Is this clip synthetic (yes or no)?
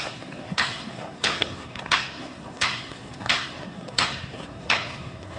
yes